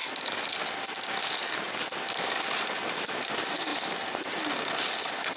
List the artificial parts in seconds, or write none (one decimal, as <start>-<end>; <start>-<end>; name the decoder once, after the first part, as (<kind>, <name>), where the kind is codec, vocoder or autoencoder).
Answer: 3.7-4.3 (vocoder, BigVGAN v2)